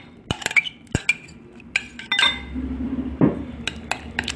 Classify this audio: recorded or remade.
recorded